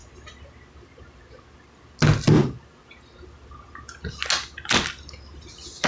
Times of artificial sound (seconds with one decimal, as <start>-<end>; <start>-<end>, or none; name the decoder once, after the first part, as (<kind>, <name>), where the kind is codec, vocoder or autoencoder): none